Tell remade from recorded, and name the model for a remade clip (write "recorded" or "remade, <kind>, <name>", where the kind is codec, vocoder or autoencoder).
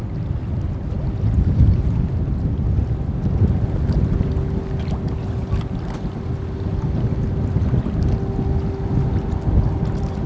recorded